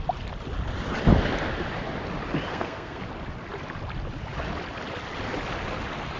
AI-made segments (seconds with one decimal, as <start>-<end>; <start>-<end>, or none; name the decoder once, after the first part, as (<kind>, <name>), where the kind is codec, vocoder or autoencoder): 2.5-3.0 (codec, SNAC)